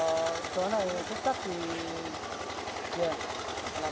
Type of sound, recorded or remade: recorded